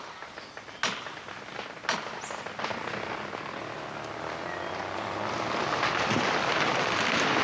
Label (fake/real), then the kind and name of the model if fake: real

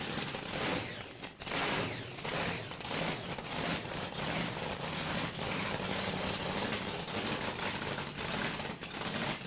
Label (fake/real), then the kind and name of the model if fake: real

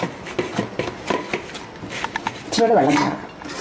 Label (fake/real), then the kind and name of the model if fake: real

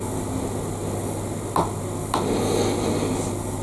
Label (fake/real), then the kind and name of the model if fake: real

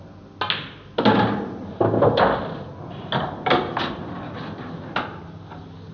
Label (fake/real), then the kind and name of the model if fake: real